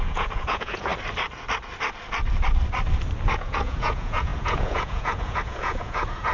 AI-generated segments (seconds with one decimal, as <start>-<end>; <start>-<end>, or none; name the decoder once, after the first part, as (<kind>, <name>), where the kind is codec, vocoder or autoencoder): 0.0-0.9 (vocoder, Vocos); 3.3-6.3